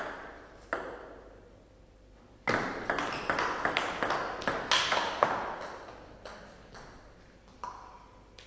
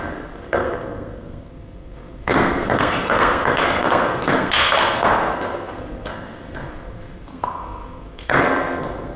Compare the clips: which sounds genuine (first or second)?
first